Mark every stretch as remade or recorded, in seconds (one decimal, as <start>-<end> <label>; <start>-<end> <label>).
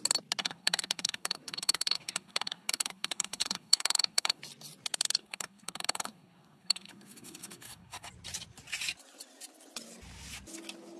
0.0-0.4 recorded; 0.4-4.4 remade; 4.4-5.2 recorded; 5.2-8.1 remade; 8.1-11.0 recorded